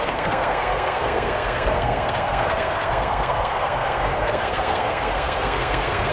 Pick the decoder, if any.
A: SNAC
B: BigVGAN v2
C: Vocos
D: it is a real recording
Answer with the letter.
A